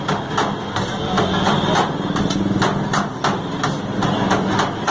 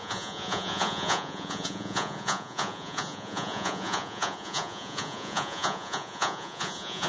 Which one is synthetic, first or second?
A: second